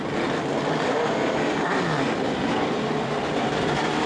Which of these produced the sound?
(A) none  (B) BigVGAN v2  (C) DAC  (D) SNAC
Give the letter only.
A